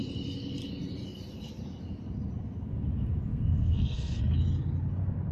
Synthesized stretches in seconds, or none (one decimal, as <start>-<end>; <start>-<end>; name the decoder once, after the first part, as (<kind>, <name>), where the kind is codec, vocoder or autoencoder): 3.3-4.2 (codec, SNAC)